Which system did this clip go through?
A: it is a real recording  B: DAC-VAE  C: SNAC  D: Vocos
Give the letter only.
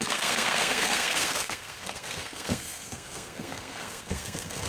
C